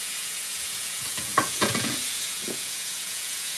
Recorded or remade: remade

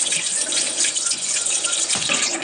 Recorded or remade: remade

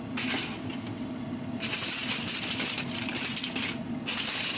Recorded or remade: recorded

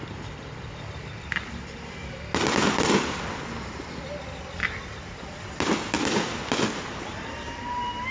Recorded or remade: recorded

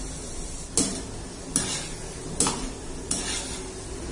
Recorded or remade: recorded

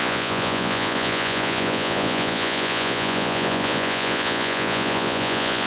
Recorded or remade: remade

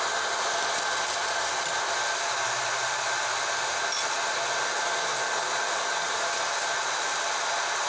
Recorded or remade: recorded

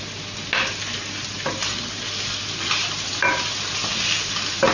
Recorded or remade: recorded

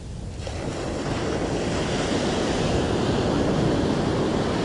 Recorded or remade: recorded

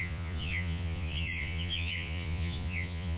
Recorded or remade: remade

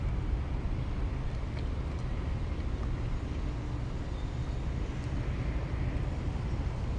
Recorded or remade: recorded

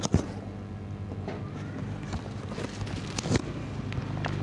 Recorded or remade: recorded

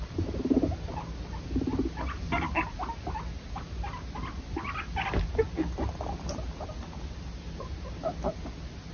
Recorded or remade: recorded